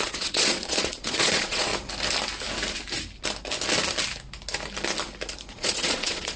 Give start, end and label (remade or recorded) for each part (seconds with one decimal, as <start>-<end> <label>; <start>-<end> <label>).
0.0-1.7 remade; 1.7-5.5 recorded; 5.5-6.4 remade